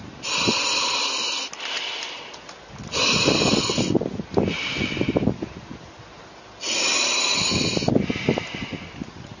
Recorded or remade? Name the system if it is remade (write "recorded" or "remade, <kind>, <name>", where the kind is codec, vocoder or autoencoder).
recorded